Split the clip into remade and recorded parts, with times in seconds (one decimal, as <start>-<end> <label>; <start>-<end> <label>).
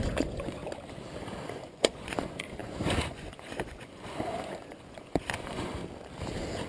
0.0-0.6 remade; 0.6-1.2 recorded; 1.2-5.8 remade; 5.8-6.7 recorded